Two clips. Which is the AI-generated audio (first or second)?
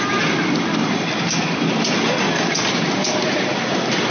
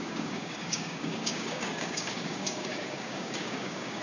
second